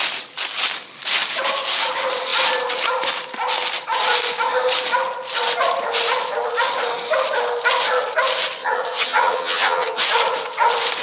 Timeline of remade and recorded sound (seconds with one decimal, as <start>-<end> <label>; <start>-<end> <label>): 0.0-8.6 recorded; 8.6-10.0 remade; 10.0-11.0 recorded